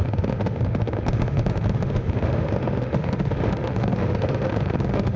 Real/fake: fake